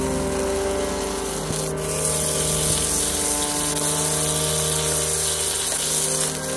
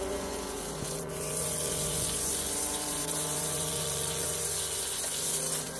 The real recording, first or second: first